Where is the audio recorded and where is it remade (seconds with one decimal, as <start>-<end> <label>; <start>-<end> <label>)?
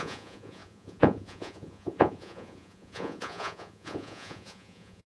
0.0-5.1 remade